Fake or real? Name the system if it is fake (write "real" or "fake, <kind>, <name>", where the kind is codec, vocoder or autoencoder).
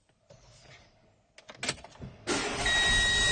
real